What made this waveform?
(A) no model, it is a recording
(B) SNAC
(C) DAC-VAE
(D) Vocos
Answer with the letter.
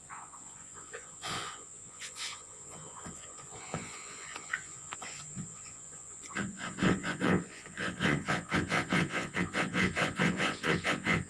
D